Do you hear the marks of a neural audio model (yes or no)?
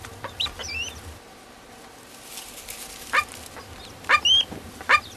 no